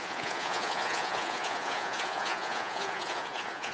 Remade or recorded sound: remade